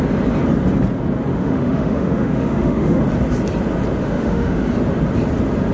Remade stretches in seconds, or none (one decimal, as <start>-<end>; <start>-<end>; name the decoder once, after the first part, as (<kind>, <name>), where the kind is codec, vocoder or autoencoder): 1.3-3.0 (autoencoder, DAC-VAE); 4.0-4.7